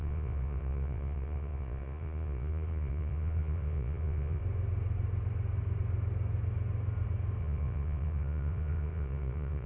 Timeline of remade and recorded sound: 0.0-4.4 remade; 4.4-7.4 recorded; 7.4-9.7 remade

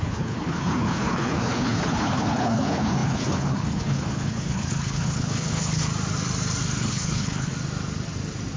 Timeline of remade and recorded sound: 0.0-5.9 remade; 5.9-6.8 recorded; 6.8-7.5 remade; 7.5-8.6 recorded

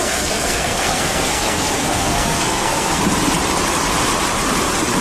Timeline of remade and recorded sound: 0.0-3.0 remade; 3.0-5.0 recorded

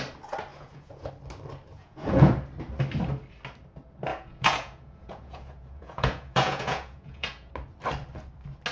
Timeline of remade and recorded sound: 0.0-0.5 recorded; 0.5-1.1 remade; 1.1-1.7 recorded; 1.7-2.3 remade; 2.3-4.1 recorded; 4.1-7.5 remade; 7.5-8.7 recorded

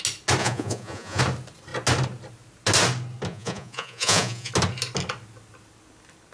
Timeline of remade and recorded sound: 0.0-0.4 recorded; 0.4-1.2 remade; 1.2-3.3 recorded; 3.3-4.5 remade; 4.5-6.3 recorded

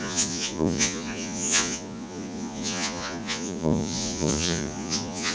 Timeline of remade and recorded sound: 0.0-5.3 remade